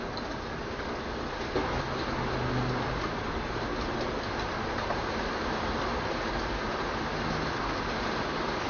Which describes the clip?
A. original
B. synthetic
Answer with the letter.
A